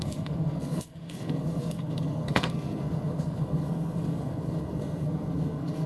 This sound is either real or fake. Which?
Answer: fake